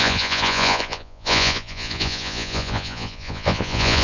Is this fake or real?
fake